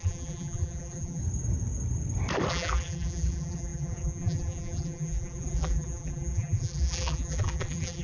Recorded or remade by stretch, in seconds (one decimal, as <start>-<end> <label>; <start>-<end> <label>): 0.0-1.2 remade; 1.2-2.5 recorded; 2.5-8.0 remade